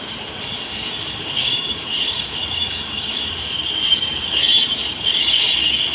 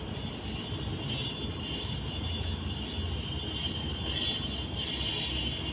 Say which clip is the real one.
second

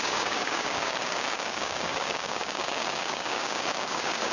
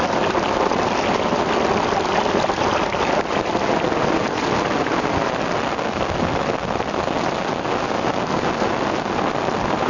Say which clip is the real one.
second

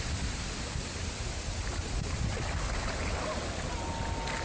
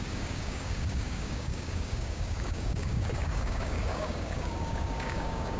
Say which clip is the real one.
first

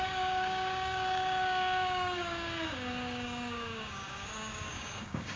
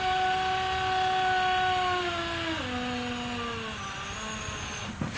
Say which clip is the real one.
second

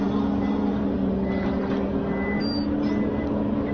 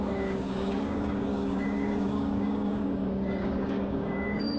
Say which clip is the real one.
first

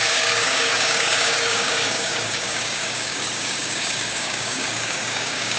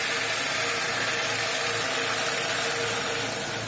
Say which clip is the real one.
second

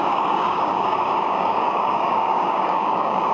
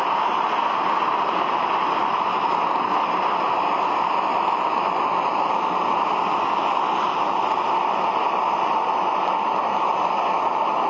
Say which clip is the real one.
second